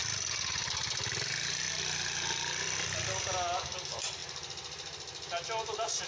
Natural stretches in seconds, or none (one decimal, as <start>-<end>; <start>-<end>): 0.0-6.1